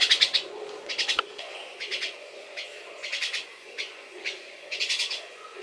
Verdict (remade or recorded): remade